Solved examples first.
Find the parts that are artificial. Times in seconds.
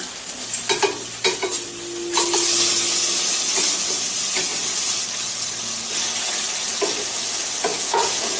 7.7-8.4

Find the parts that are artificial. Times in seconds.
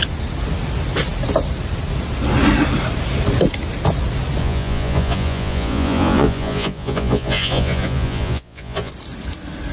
4.4-8.9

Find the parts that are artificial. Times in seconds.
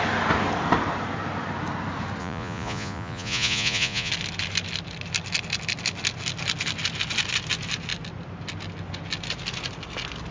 2.2-4.1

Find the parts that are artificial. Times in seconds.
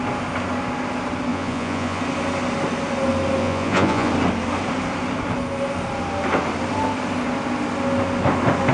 1.3-2.0; 3.4-4.1